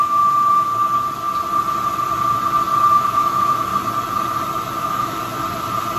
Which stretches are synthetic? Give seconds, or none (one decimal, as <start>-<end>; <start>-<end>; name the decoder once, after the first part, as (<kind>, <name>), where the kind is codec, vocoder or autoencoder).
0.0-0.7 (autoencoder, DAC-VAE); 2.9-3.7; 4.8-5.2